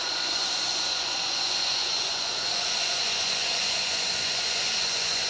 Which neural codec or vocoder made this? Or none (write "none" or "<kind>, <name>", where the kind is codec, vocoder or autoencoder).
vocoder, Vocos